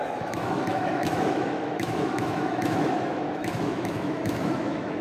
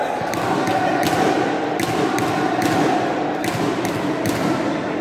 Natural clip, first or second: second